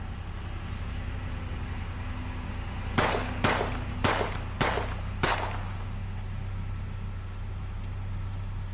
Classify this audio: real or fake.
real